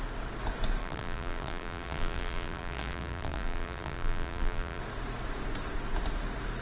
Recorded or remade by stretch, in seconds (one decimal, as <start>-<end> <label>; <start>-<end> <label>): 0.0-0.8 recorded; 0.8-4.8 remade; 4.8-6.6 recorded